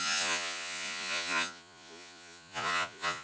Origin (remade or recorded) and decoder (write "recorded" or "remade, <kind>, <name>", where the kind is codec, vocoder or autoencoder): remade, vocoder, Vocos